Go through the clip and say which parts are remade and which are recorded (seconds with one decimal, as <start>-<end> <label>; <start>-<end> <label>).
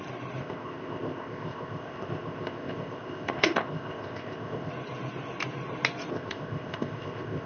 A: 0.0-0.4 recorded; 0.4-4.7 remade; 4.7-6.1 recorded; 6.1-7.5 remade